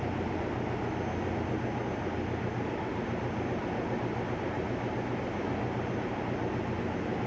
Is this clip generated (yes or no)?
no